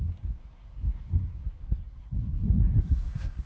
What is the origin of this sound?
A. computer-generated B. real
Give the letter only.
A